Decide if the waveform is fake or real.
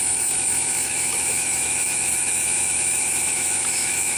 fake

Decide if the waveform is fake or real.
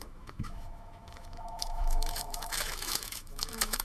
fake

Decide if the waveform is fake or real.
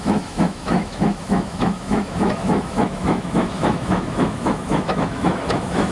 fake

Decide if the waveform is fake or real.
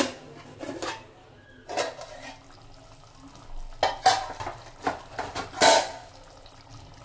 real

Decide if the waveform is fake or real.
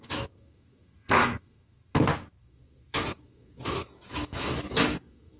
fake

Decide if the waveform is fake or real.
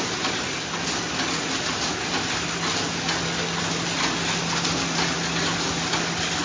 real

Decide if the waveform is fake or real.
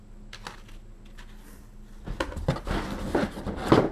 real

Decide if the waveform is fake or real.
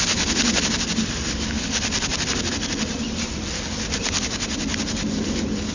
real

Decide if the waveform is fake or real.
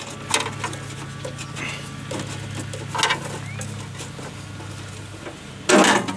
real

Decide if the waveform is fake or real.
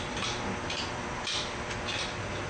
real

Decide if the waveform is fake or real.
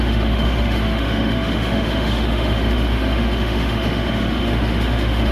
fake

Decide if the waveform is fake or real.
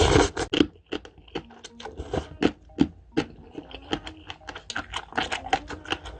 real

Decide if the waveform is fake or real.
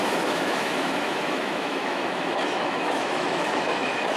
fake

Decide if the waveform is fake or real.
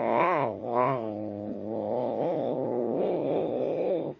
fake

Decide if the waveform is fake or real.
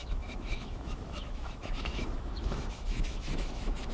fake